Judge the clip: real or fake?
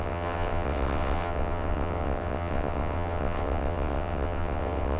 fake